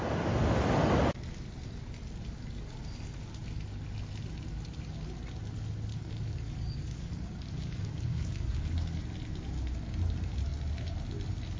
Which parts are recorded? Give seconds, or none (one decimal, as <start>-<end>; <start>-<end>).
0.0-5.9; 9.0-11.6